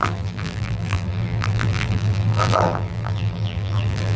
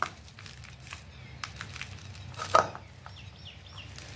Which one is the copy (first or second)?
first